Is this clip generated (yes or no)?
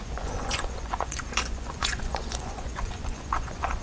yes